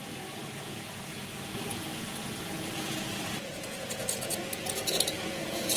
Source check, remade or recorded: remade